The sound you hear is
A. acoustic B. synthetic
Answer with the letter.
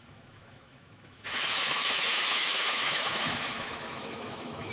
B